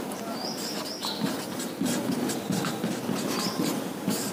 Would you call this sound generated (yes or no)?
yes